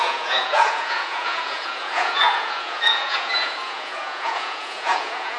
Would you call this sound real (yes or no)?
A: no